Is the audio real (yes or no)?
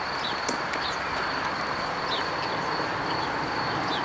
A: yes